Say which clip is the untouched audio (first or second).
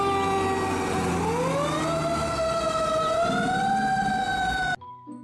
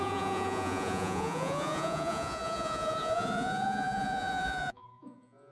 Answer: first